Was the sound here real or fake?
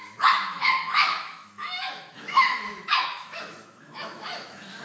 fake